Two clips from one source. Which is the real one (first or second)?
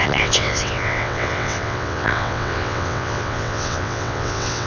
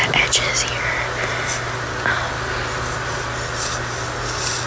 second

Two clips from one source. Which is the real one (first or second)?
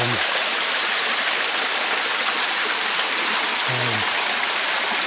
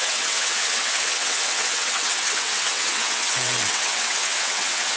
first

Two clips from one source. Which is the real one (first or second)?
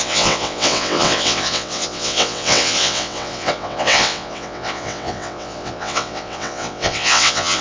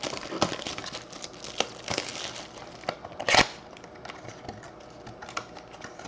second